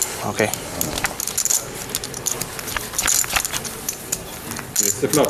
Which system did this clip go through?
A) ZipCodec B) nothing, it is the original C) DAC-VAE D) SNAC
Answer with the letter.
B